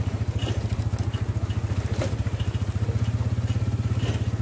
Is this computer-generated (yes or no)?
no